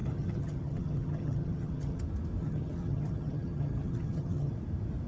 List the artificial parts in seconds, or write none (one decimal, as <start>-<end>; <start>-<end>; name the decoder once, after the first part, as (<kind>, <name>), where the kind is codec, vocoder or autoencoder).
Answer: 0.0-2.0 (vocoder, HiFi-GAN); 2.4-4.5